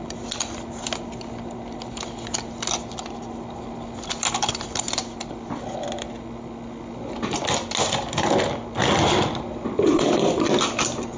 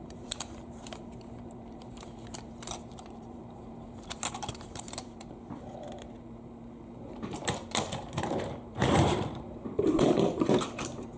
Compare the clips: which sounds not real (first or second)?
second